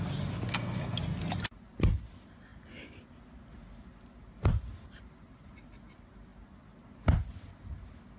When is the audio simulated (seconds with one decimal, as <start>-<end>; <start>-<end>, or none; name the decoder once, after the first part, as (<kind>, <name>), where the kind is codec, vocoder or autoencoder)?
0.5-1.0 (codec, SNAC)